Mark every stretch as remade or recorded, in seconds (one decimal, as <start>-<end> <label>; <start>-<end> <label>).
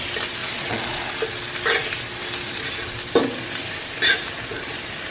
0.0-0.4 recorded; 0.4-1.0 remade; 1.0-5.1 recorded